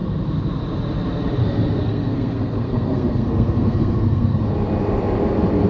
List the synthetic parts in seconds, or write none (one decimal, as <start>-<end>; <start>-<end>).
1.4-4.4